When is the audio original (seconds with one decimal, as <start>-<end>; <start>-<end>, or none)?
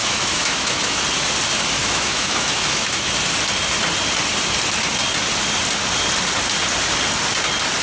1.0-1.8; 3.1-7.8